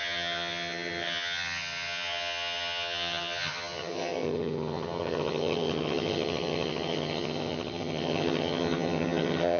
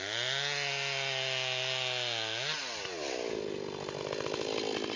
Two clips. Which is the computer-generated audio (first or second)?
first